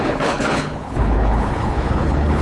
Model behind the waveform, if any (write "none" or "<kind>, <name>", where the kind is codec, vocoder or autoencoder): codec, HILCodec